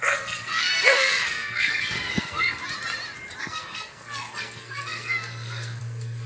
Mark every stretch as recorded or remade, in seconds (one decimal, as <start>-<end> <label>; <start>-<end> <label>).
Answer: 0.0-2.6 remade; 2.6-3.4 recorded; 3.4-6.3 remade